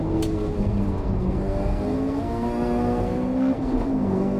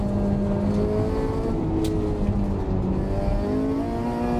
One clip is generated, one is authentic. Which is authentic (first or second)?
second